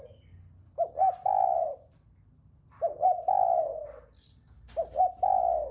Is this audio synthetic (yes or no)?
no